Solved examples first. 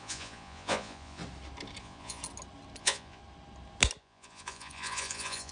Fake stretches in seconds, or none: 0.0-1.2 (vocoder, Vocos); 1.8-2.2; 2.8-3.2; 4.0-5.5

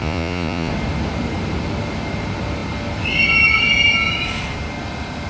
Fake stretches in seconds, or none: 0.0-0.7 (vocoder, Vocos)

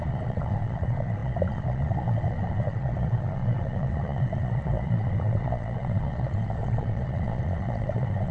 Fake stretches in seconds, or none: 0.0-8.3 (vocoder, Vocos)

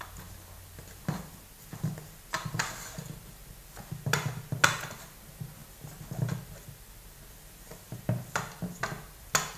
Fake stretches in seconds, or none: none

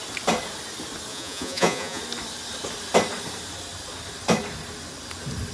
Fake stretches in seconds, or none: 1.1-2.0 (vocoder, Vocos)